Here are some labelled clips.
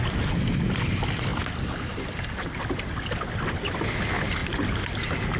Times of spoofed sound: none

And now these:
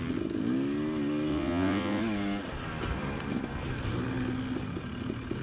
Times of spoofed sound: 1.3-2.0 (vocoder, WaveNeXt)

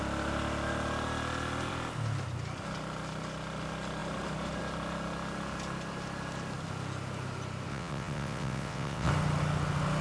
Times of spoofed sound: 7.7-9.1 (vocoder, WaveNeXt)